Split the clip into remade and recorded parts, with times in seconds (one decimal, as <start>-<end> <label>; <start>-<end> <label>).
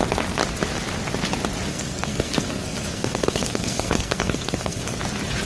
0.0-1.7 recorded; 1.7-5.0 remade; 5.0-5.5 recorded